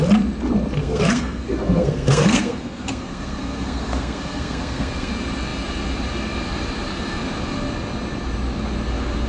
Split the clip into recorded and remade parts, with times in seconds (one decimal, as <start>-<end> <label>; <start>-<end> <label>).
0.0-0.8 recorded; 0.8-5.1 remade; 5.1-9.3 recorded